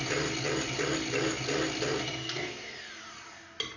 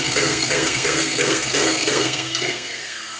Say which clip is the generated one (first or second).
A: second